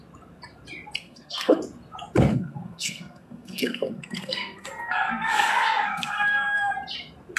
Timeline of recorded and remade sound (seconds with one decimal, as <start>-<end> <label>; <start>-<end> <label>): 0.0-1.0 recorded; 1.0-1.6 remade; 1.6-2.3 recorded; 2.3-6.7 remade; 6.7-7.4 recorded